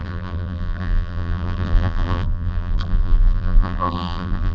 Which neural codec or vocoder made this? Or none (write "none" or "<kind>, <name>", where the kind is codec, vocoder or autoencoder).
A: vocoder, BigVGAN v2